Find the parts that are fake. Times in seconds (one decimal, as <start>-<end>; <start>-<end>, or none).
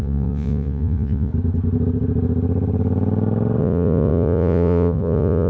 0.0-1.3; 3.6-5.5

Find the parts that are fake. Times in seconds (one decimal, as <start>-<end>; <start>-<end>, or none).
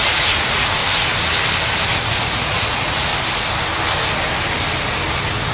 0.0-0.8; 2.1-3.1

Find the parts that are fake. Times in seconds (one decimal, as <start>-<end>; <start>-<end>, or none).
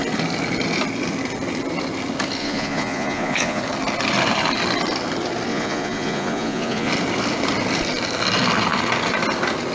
2.4-3.6; 5.5-6.9